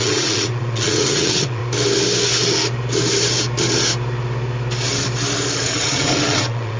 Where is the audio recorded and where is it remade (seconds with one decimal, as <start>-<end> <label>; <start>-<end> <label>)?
0.0-1.6 remade; 1.6-5.7 recorded; 5.7-6.8 remade

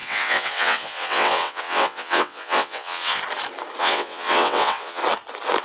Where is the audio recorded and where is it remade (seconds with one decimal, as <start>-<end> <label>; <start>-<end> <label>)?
0.0-3.2 remade; 3.2-3.8 recorded; 3.8-5.0 remade; 5.0-5.6 recorded

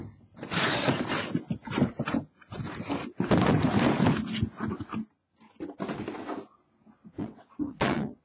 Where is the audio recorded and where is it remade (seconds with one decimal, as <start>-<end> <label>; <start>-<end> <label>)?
0.0-7.2 recorded; 7.2-8.2 remade

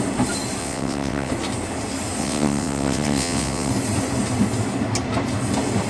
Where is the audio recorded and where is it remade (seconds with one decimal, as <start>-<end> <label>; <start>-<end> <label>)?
0.0-0.6 recorded; 0.6-1.3 remade; 1.3-2.2 recorded; 2.2-3.7 remade; 3.7-5.9 recorded

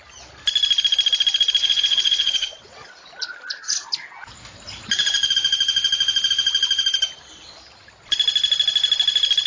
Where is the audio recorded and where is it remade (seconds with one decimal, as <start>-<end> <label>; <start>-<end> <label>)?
0.0-1.6 recorded; 1.6-2.9 remade; 2.9-9.5 recorded

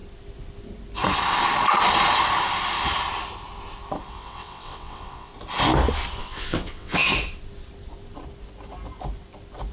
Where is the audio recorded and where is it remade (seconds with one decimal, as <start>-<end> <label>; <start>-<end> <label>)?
0.0-4.1 recorded; 4.1-5.3 remade; 5.3-6.2 recorded; 6.2-7.1 remade; 7.1-9.7 recorded